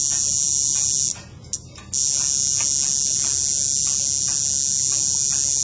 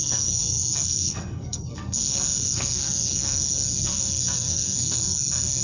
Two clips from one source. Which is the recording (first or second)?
first